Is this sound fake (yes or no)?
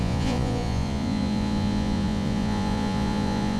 yes